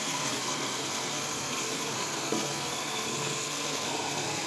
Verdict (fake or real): fake